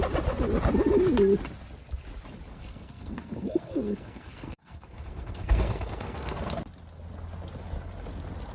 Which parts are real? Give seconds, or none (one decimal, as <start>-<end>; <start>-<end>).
0.0-2.5; 6.6-8.5